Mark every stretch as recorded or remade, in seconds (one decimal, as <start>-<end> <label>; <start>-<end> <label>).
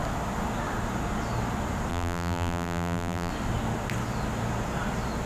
0.0-1.9 recorded; 1.9-3.3 remade; 3.3-5.3 recorded